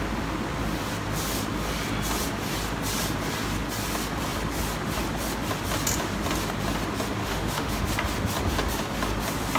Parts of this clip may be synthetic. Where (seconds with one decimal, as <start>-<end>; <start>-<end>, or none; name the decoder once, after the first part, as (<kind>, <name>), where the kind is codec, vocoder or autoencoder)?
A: 7.2-7.8 (autoencoder, DAC-VAE)